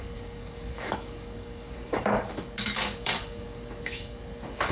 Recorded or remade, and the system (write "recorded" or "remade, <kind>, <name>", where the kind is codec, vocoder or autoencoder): remade, codec, DAC